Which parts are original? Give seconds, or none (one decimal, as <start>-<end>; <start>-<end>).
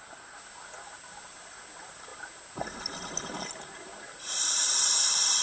0.0-5.4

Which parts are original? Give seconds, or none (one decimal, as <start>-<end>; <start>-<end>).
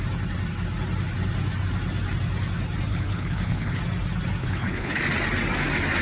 0.0-2.9; 3.8-4.4; 5.0-6.0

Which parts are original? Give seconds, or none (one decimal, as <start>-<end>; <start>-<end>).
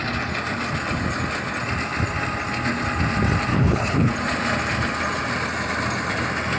0.0-3.5; 4.1-6.6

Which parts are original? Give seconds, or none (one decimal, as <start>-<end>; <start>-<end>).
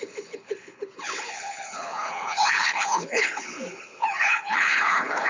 none